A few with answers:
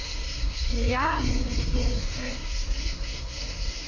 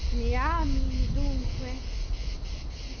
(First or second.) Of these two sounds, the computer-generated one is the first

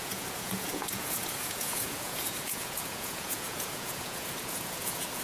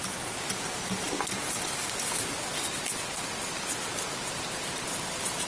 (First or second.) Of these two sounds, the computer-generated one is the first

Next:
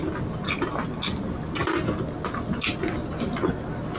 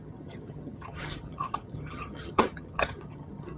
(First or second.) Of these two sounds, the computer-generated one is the second